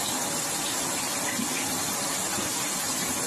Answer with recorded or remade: recorded